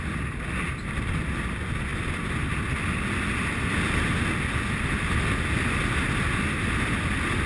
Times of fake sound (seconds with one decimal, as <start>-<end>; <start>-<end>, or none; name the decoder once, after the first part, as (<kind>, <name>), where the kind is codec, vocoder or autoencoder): none